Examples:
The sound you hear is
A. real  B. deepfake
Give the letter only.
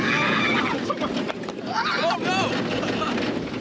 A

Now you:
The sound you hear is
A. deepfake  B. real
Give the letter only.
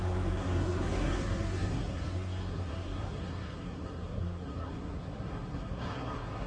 A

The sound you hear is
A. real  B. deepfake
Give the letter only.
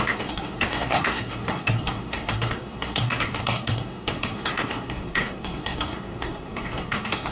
B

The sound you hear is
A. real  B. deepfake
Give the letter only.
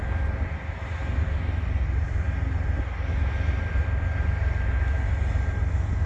A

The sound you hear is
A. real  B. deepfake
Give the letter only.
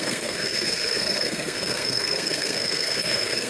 B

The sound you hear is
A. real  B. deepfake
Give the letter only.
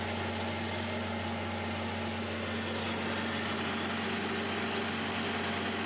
A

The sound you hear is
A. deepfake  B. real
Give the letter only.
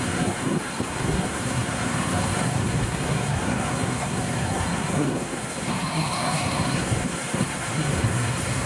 A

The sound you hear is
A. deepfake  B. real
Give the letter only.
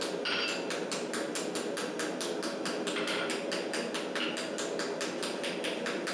B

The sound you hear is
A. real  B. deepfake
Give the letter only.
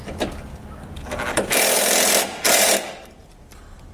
A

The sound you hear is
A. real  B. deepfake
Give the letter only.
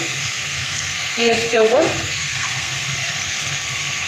B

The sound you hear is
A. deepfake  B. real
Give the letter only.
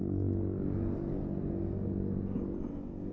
B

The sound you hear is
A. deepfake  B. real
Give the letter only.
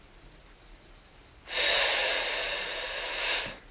B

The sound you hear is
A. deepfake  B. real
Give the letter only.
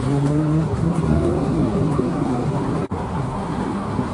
A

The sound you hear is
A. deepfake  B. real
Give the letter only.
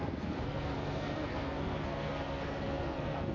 A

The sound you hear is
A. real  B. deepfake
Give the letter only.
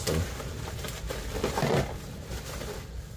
A